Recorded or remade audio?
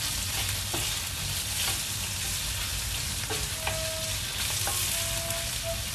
recorded